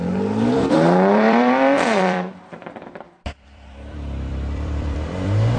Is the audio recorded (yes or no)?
no